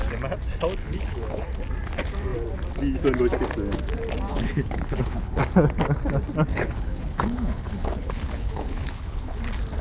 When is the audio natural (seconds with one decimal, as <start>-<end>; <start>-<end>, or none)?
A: 0.0-0.8; 1.4-4.3; 5.4-6.5; 9.4-9.8